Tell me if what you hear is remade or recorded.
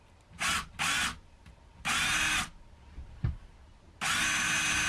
recorded